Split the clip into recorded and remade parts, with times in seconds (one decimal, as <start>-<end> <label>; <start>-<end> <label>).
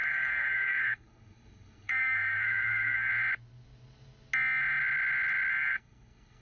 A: 0.0-3.1 remade; 3.1-5.5 recorded; 5.5-6.4 remade